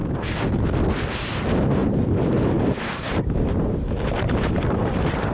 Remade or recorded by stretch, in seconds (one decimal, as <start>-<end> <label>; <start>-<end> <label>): 0.0-0.6 remade; 0.6-1.8 recorded; 1.8-5.3 remade